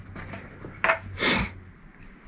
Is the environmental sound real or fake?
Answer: real